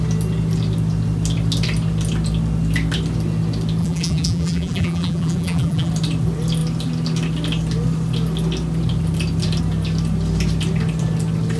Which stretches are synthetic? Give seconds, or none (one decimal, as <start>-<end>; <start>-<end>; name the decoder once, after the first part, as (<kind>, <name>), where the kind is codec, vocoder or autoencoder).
3.8-5.9 (vocoder, BigVGAN v2)